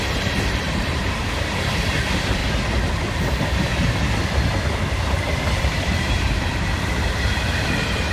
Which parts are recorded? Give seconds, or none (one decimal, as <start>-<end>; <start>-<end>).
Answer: 2.4-2.9; 3.7-5.6